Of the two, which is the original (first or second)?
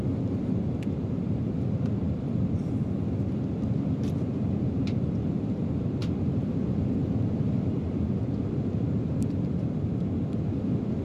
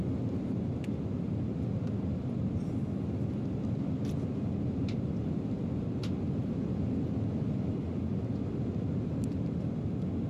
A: second